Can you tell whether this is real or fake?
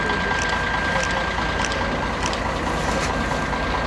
real